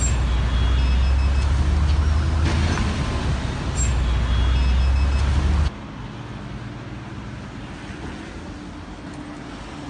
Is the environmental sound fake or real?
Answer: real